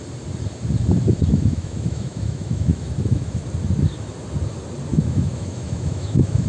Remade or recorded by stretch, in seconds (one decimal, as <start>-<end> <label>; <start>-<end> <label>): 0.0-1.3 recorded; 1.3-3.4 remade; 3.4-4.9 recorded; 4.9-6.5 remade